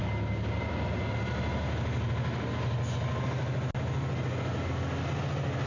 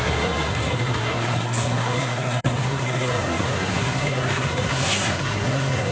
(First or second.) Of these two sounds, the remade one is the second